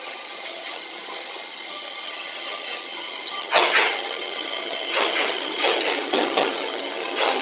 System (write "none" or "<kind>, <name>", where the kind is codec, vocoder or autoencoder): vocoder, HiFi-GAN